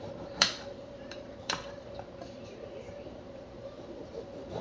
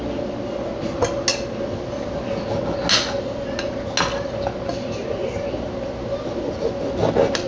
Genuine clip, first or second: second